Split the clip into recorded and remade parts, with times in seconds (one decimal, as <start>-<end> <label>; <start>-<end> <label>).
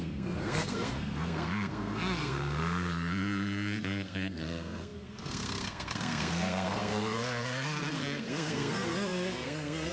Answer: 0.0-9.9 remade